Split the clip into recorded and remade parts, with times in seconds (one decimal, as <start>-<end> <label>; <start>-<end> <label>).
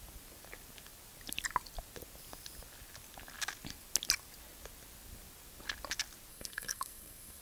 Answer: 0.0-6.3 recorded; 6.3-7.4 remade